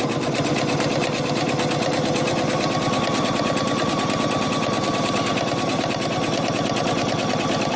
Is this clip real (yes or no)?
yes